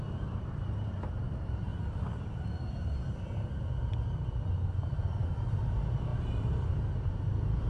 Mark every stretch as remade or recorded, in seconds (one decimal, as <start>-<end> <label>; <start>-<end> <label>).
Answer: 0.0-1.7 remade; 1.7-5.5 recorded; 5.5-7.7 remade